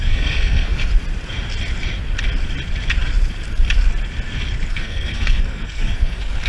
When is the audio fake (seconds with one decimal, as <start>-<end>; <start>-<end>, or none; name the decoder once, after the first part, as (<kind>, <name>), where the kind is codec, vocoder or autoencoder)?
0.0-0.9 (codec, SNAC); 4.7-6.5